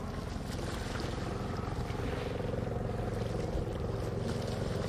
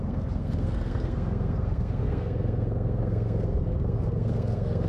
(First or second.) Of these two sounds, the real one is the first